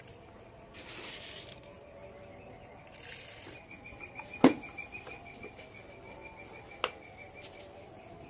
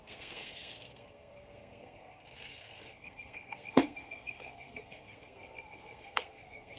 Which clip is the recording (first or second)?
first